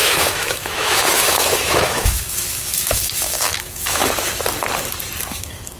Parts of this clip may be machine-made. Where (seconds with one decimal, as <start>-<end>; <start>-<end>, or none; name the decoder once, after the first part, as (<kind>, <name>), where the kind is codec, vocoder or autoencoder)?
0.0-4.0 (autoencoder, DAC-VAE); 5.3-5.8